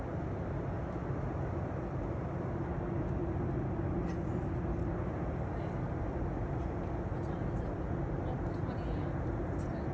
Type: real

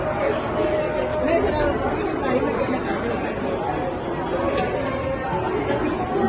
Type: real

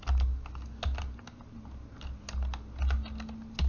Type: real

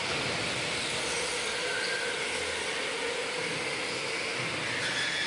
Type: real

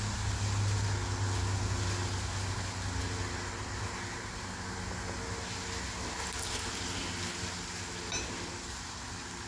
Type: real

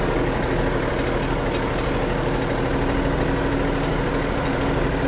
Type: real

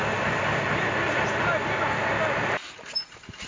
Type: real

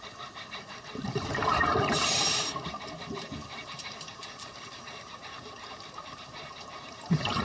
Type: fake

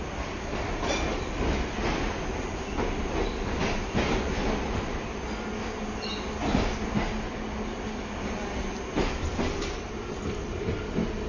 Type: real